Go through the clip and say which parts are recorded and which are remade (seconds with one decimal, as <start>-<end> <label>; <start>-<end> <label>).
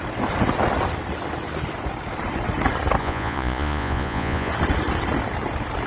0.0-3.0 recorded; 3.0-4.5 remade; 4.5-5.9 recorded